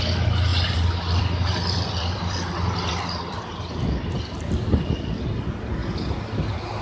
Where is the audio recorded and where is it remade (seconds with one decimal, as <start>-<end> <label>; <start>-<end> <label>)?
0.0-0.5 recorded; 0.5-3.4 remade; 3.4-6.8 recorded